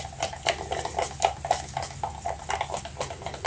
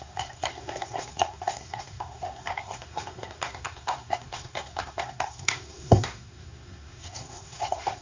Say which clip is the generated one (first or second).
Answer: second